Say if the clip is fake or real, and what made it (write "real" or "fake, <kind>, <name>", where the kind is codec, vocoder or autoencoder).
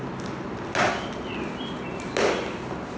real